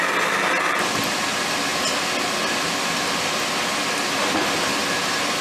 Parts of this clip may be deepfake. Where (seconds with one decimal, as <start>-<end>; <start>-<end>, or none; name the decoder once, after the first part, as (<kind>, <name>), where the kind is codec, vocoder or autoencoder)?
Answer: none